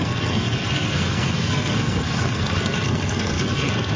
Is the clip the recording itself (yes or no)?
no